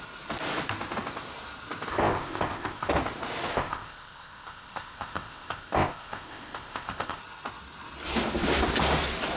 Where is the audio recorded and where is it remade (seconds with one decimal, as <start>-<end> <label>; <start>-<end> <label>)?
0.0-1.9 recorded; 1.9-2.9 remade; 2.9-3.5 recorded; 3.5-7.2 remade; 7.2-9.4 recorded